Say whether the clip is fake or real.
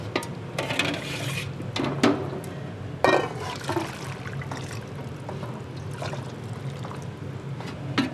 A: real